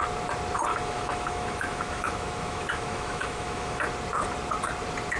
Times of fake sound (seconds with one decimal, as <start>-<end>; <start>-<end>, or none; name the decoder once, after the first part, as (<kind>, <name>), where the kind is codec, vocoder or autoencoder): 0.7-3.8 (autoencoder, DAC-VAE)